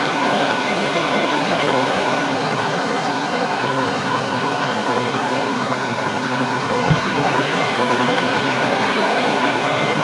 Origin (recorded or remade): remade